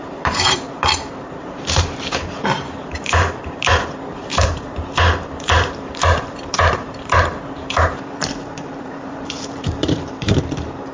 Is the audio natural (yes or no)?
no